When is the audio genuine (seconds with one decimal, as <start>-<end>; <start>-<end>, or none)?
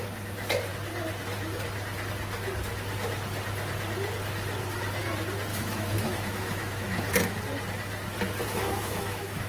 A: 0.0-5.5; 7.4-8.5